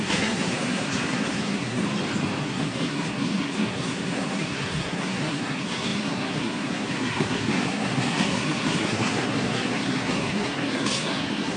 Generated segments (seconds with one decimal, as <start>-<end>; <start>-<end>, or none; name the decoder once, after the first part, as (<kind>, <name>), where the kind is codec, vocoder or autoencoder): 0.0-1.8 (codec, SNAC); 2.4-11.6